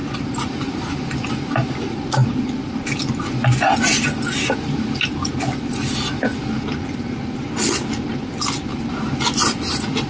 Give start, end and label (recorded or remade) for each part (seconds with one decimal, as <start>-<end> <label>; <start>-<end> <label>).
0.0-1.3 remade; 1.3-8.7 recorded; 8.7-9.2 remade; 9.2-10.1 recorded